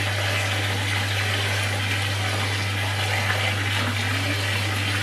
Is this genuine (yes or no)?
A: yes